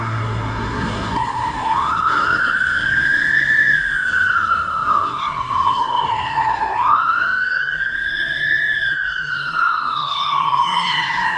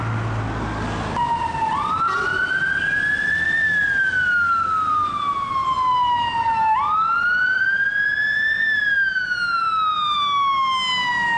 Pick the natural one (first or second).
second